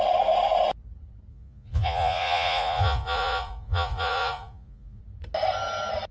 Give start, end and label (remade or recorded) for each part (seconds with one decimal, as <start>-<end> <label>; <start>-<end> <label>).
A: 0.0-1.3 recorded; 1.3-5.0 remade; 5.0-6.1 recorded